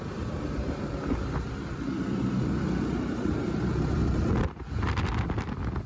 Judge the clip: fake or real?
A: real